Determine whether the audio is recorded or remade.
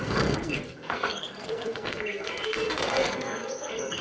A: remade